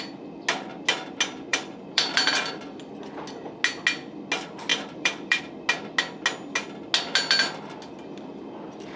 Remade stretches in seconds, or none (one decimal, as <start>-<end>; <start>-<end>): 1.5-2.5; 4.7-5.4